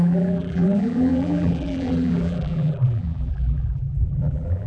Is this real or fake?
fake